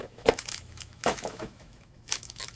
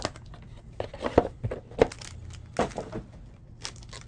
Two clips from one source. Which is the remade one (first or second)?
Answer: first